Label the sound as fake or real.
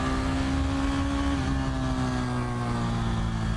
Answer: real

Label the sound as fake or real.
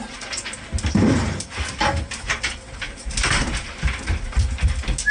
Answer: real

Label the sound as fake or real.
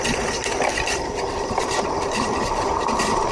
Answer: fake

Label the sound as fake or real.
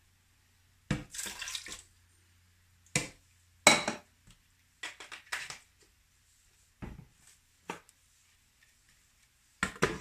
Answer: real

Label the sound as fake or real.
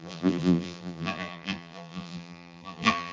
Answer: fake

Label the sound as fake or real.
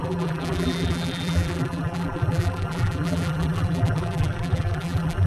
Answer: fake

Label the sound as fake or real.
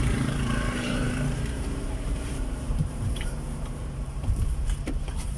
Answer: fake